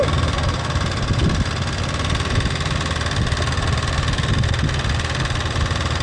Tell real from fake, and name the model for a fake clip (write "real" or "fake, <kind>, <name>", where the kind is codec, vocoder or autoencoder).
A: real